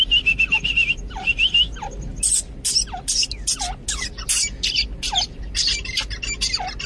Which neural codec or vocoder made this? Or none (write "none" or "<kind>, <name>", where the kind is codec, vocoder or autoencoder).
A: none